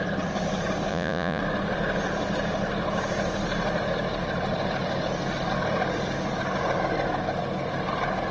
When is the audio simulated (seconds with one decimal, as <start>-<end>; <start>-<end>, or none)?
0.9-1.4